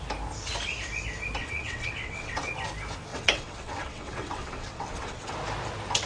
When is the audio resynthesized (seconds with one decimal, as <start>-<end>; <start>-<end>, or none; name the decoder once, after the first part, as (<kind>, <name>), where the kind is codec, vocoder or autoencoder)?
1.4-2.4 (vocoder, WaveNeXt); 3.1-5.3